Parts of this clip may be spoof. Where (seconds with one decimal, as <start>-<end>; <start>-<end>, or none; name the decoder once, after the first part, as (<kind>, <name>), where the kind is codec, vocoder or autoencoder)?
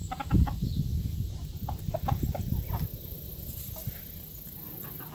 none